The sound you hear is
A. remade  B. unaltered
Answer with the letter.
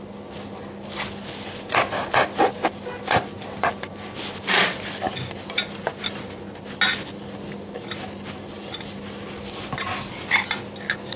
B